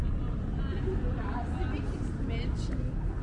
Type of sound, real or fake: real